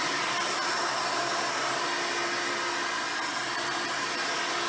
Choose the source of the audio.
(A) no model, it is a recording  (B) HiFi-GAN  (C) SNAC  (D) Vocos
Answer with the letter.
A